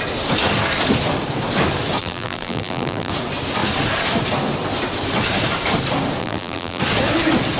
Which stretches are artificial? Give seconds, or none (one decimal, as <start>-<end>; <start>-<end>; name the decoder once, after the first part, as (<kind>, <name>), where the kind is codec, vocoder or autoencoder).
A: 2.0-3.1 (vocoder, BigVGAN v2); 6.2-6.8